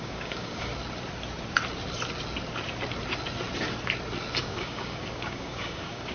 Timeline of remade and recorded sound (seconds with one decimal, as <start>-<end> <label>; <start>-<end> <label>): 0.0-0.7 remade; 0.7-4.4 recorded; 4.4-6.1 remade

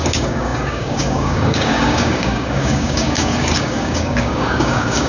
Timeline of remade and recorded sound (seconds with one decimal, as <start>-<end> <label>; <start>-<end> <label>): 0.0-5.1 remade

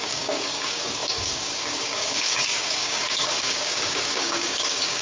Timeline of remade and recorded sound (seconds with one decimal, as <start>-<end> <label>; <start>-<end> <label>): 0.0-5.0 remade

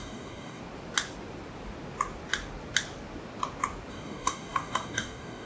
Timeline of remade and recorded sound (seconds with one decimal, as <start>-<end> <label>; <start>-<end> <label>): 0.0-0.6 remade; 0.6-3.9 recorded; 3.9-5.5 remade

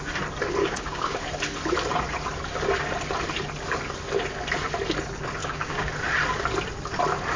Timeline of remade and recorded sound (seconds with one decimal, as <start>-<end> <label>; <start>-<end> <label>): 0.0-0.6 recorded; 0.6-1.2 remade; 1.2-5.4 recorded; 5.4-5.9 remade; 5.9-7.4 recorded

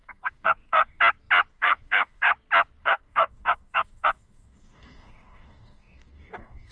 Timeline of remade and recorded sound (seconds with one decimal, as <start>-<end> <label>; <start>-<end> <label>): 0.0-1.0 remade; 1.0-1.5 recorded; 1.5-2.3 remade; 2.3-2.8 recorded; 2.8-6.7 remade

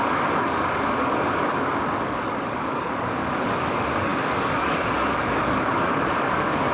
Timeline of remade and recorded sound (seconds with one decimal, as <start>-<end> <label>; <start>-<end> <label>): 0.0-6.7 remade